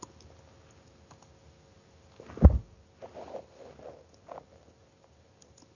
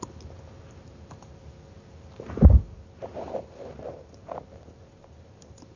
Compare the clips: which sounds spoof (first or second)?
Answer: second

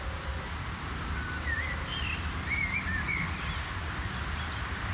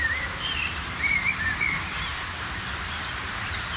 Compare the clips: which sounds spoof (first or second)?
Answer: second